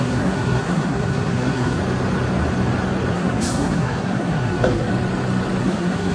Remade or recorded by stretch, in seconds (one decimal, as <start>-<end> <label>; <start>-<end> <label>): 0.0-1.8 remade; 1.8-3.1 recorded; 3.1-4.9 remade; 4.9-5.6 recorded; 5.6-6.1 remade